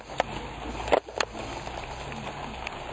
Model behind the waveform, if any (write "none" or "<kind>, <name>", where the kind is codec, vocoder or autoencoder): none